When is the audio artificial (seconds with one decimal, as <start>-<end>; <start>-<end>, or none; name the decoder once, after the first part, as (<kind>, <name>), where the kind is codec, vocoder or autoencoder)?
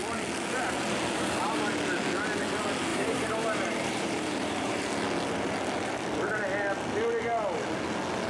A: 2.9-4.9 (vocoder, BigVGAN v2)